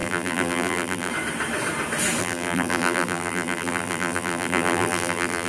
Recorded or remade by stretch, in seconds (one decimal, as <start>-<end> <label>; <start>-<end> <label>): 0.0-1.1 remade; 1.1-2.2 recorded; 2.2-5.5 remade